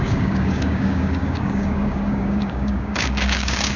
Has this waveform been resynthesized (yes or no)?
yes